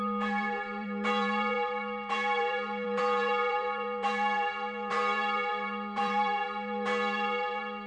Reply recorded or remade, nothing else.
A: remade